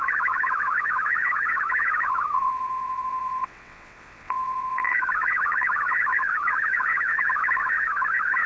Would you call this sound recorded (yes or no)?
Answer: no